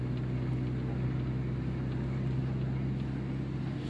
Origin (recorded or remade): recorded